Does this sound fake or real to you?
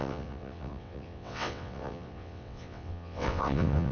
fake